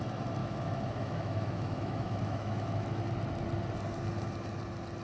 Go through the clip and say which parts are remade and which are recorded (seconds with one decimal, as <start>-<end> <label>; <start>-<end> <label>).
0.0-0.4 recorded; 0.4-3.0 remade; 3.0-5.0 recorded